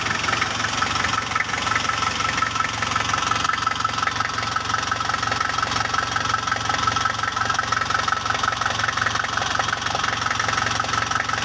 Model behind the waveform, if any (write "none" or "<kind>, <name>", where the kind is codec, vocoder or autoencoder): none